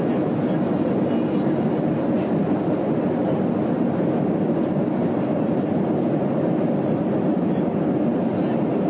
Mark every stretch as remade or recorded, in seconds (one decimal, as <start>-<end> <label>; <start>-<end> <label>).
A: 0.0-8.1 recorded; 8.1-8.9 remade